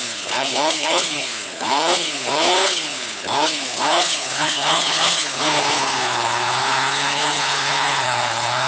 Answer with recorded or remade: remade